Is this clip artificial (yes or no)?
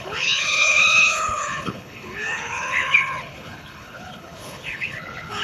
yes